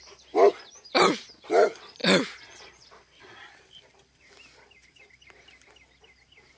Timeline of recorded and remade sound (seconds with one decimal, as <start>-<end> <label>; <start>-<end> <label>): 0.0-6.6 recorded